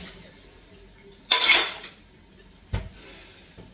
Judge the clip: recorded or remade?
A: recorded